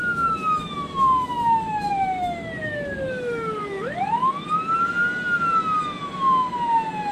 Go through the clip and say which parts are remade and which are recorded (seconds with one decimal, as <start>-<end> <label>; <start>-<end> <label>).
0.0-4.3 remade; 4.3-7.1 recorded